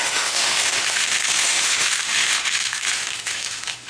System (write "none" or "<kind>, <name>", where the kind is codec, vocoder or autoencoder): autoencoder, DAC-VAE